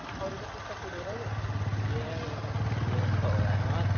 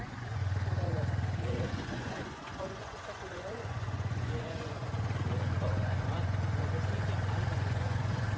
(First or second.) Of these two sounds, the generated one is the second